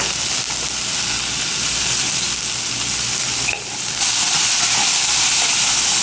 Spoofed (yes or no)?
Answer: no